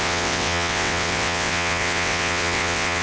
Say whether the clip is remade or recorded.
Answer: remade